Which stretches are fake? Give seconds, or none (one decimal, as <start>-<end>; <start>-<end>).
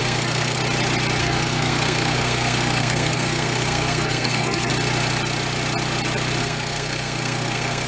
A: 0.0-0.6; 1.2-4.7; 6.4-7.9